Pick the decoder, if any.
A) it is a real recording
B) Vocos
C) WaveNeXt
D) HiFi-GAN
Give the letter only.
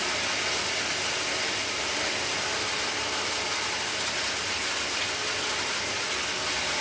A